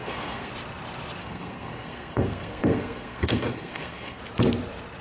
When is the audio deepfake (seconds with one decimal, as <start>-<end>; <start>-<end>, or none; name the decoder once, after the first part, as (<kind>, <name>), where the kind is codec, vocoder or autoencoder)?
0.0-0.5 (codec, SNAC); 1.2-4.2